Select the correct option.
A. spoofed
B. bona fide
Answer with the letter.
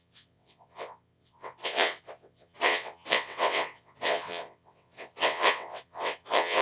A